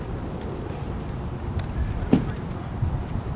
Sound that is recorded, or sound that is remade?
remade